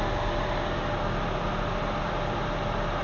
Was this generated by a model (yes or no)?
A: no